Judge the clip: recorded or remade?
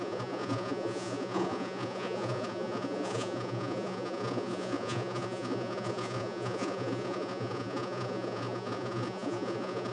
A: remade